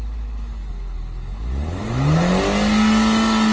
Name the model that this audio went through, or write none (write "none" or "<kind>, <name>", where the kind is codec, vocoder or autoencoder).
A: none